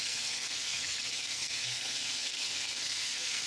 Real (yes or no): no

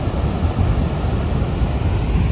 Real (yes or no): yes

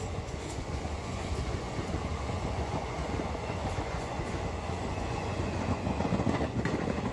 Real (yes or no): no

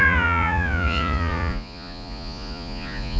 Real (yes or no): no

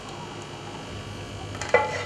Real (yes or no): yes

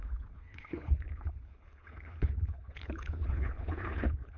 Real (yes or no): no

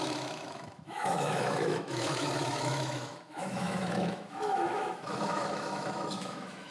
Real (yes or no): no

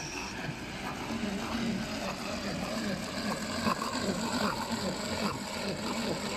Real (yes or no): yes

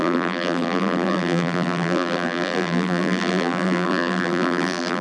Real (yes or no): no